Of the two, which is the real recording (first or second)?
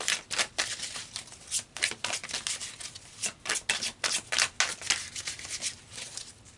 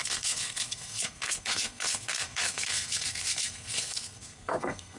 first